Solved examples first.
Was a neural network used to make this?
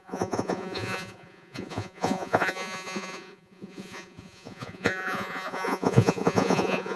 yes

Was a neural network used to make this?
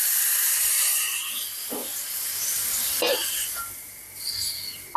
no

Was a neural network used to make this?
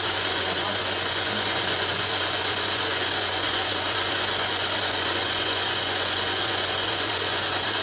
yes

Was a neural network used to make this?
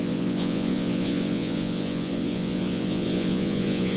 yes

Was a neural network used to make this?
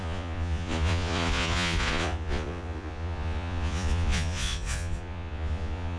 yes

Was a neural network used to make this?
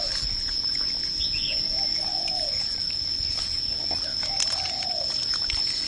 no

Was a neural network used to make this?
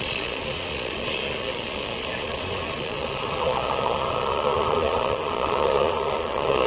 yes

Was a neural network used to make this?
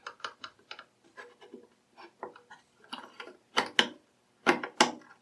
no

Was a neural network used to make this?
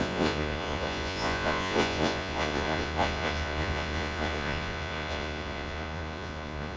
yes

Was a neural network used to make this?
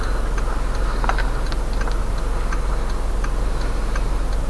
no